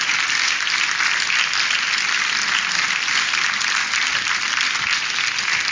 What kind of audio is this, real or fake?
real